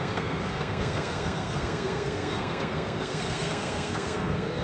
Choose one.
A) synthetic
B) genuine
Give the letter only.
A